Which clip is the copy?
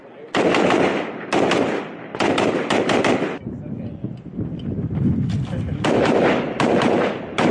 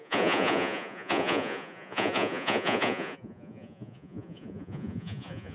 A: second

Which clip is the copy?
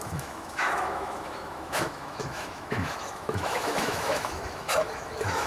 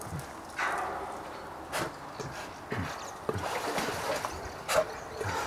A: first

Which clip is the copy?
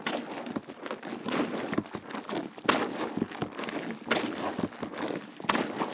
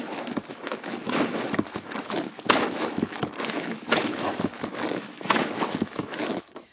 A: second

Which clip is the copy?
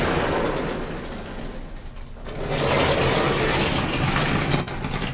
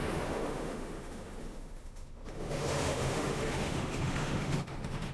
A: second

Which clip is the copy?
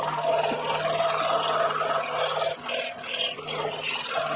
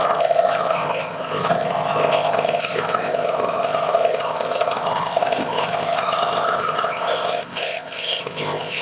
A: second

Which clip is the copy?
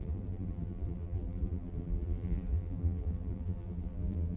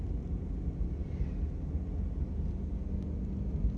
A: first